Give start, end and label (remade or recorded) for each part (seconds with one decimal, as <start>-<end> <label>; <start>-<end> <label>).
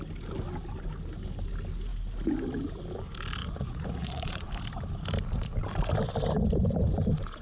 0.0-3.4 recorded; 3.4-4.5 remade; 4.5-7.4 recorded